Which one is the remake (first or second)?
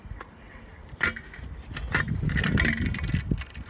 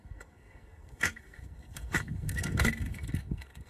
second